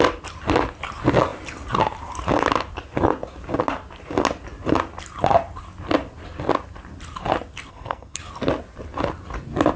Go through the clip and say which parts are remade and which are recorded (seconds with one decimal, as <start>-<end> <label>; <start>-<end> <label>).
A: 0.0-7.7 recorded; 7.7-8.2 remade; 8.2-9.8 recorded